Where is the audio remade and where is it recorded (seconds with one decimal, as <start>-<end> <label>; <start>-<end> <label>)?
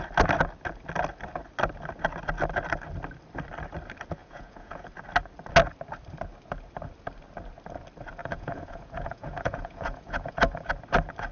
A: 0.0-4.2 recorded; 4.2-4.9 remade; 4.9-8.2 recorded; 8.2-10.7 remade; 10.7-11.3 recorded